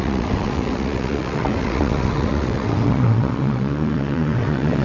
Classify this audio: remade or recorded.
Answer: remade